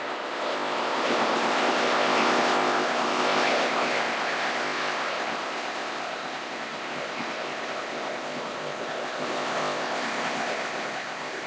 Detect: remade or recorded remade